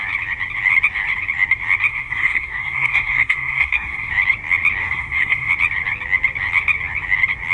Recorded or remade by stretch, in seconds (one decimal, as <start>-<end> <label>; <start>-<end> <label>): 0.0-1.9 recorded; 1.9-4.1 remade; 4.1-4.8 recorded; 4.8-5.5 remade; 5.5-7.5 recorded